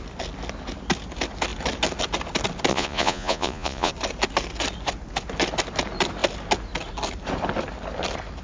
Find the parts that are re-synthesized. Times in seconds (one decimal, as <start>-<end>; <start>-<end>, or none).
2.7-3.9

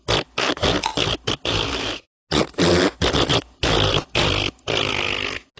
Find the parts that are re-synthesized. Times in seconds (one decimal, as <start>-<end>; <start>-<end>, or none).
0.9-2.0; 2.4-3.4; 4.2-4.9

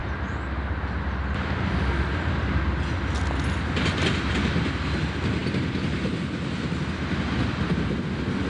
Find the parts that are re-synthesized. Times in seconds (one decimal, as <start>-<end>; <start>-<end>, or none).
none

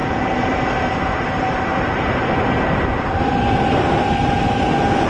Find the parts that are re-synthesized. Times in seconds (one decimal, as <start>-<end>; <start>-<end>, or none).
0.0-2.1

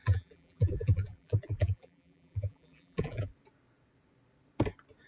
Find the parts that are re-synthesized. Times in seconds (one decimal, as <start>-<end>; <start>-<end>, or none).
0.0-3.3

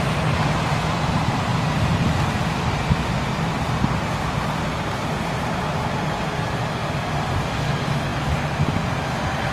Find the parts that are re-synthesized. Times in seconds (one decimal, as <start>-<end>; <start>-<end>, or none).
1.5-2.1